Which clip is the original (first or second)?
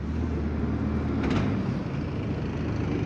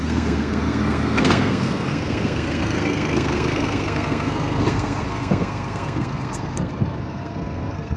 first